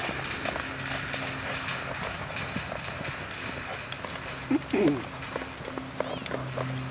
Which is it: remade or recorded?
recorded